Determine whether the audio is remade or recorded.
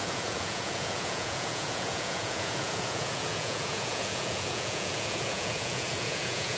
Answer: remade